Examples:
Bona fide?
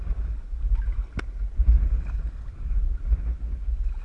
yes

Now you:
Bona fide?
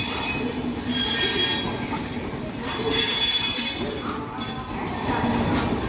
yes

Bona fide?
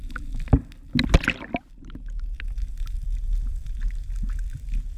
yes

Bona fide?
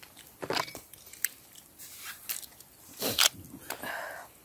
yes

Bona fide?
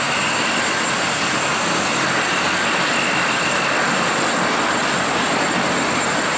yes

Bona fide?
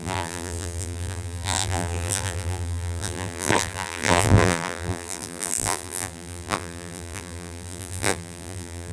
no